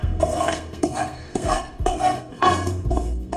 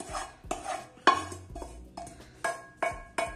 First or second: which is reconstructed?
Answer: first